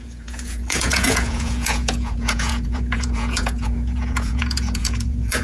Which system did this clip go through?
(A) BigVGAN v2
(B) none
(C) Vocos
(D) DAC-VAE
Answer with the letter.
C